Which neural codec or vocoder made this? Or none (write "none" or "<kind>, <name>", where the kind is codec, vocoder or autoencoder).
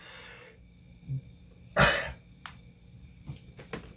none